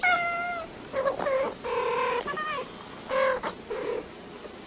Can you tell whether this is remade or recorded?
recorded